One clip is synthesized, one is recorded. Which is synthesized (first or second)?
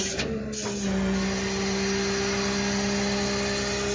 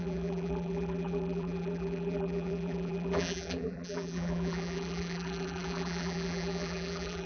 second